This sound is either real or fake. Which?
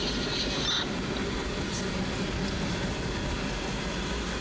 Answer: real